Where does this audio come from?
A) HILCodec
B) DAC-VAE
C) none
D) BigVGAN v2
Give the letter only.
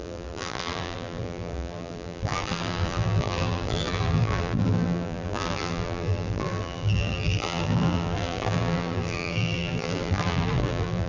D